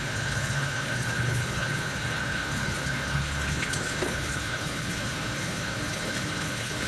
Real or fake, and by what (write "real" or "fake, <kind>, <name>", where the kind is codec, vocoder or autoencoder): fake, codec, HILCodec